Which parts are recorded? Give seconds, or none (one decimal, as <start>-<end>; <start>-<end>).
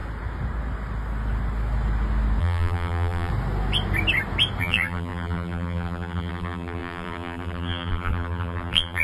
0.0-2.4; 3.3-4.6